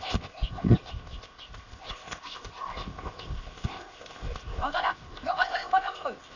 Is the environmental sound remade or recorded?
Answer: remade